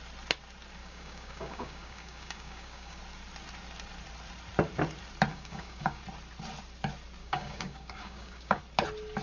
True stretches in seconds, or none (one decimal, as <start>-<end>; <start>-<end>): 0.0-0.8; 3.0-5.3; 6.0-7.2; 8.6-9.2

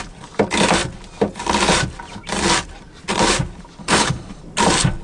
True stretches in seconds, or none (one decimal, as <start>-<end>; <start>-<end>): 0.0-3.8; 4.4-5.0

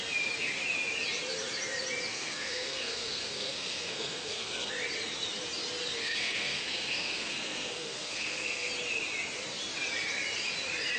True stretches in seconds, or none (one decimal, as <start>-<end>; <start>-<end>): 0.0-2.1; 4.7-6.0; 8.7-11.0

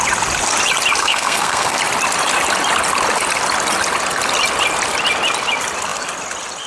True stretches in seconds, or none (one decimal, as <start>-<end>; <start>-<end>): 0.0-1.0; 1.8-6.7

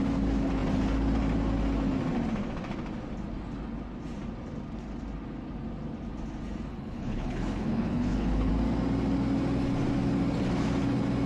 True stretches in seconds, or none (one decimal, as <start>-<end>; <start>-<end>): 0.0-6.7; 8.5-11.3